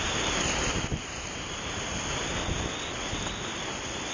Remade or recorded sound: recorded